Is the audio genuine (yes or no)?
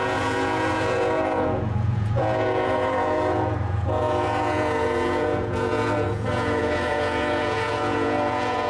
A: no